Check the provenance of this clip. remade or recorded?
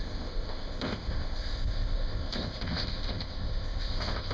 remade